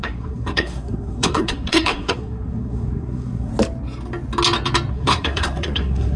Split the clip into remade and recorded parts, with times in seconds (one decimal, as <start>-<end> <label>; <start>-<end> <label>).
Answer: 0.0-3.5 remade; 3.5-4.9 recorded; 4.9-6.2 remade